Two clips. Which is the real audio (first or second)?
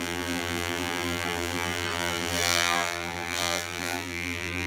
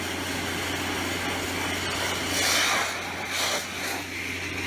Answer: second